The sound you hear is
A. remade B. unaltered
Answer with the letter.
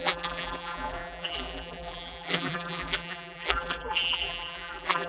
A